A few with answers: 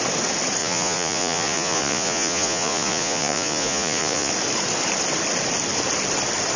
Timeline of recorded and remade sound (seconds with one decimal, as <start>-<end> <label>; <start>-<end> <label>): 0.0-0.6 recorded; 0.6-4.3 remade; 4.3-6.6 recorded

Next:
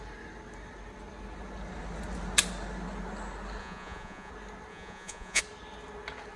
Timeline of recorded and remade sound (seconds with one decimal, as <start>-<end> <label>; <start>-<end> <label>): 0.0-3.6 recorded; 3.6-4.3 remade; 4.3-4.7 recorded; 4.7-5.4 remade; 5.4-6.4 recorded

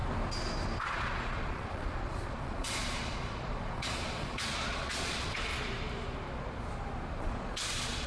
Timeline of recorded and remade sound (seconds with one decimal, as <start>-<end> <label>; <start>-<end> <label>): 0.0-0.8 recorded; 0.8-5.5 remade; 5.5-7.2 recorded; 7.2-8.1 remade

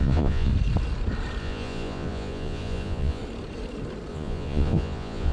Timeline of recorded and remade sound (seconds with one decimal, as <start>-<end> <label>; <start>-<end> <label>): 0.0-0.5 remade; 0.5-1.4 recorded; 1.4-3.2 remade; 3.2-4.1 recorded; 4.1-5.3 remade